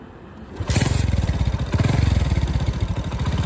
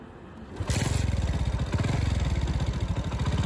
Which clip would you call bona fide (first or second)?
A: second